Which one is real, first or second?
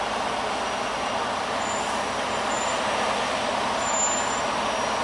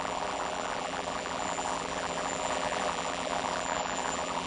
first